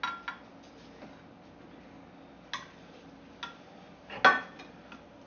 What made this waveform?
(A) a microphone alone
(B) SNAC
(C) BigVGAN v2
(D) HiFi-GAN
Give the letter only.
A